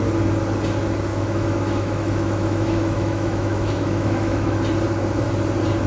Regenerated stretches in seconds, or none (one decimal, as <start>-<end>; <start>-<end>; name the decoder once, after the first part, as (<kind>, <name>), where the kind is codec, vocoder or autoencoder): 1.1-4.6 (autoencoder, DAC-VAE)